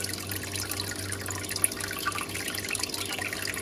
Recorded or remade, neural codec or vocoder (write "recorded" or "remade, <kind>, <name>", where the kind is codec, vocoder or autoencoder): recorded